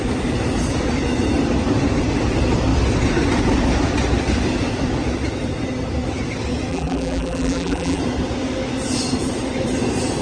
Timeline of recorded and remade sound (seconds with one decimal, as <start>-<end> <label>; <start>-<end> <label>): 0.0-6.7 recorded; 6.7-8.0 remade; 8.0-10.2 recorded